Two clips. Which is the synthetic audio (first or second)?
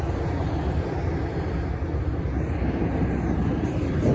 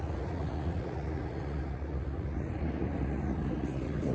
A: second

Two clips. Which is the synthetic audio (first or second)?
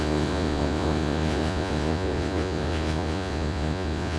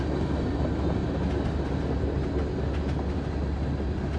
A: first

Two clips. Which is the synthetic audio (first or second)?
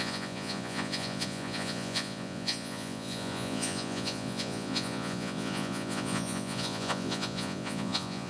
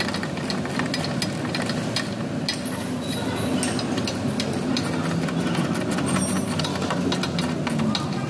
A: first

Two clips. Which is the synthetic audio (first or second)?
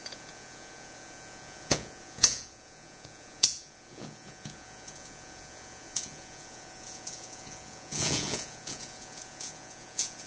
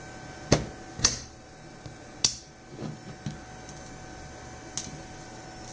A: first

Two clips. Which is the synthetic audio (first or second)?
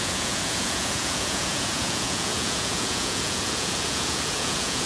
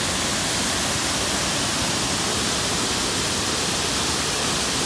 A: first